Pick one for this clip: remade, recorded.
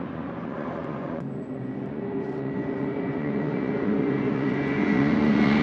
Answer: remade